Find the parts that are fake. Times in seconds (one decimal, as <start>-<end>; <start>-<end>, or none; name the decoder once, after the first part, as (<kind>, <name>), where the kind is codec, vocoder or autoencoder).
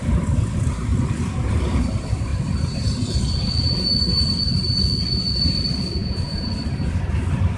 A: 6.0-6.5 (vocoder, Vocos)